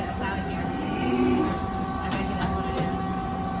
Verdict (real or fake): real